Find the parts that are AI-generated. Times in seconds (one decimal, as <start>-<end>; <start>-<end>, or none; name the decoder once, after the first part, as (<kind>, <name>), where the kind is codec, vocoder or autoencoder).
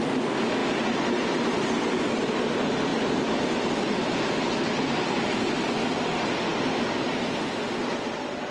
none